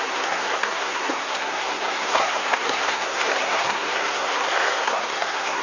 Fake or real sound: fake